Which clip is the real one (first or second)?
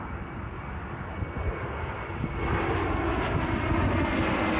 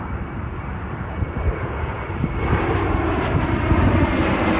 first